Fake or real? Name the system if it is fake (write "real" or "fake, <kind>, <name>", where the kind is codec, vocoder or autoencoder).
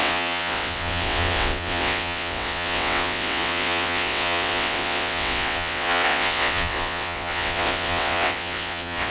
fake, vocoder, WaveNeXt